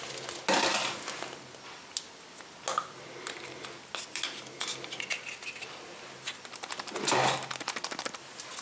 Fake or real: real